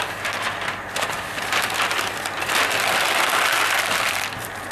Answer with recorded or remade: recorded